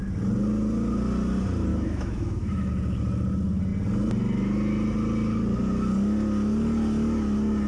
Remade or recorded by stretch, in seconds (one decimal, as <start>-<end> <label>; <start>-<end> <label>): 0.0-1.7 recorded; 1.7-2.7 remade; 2.7-7.7 recorded